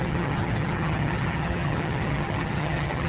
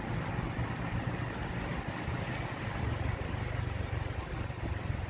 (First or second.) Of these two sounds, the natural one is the second